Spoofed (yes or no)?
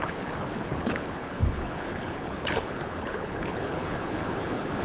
yes